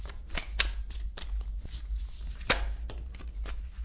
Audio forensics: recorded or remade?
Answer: recorded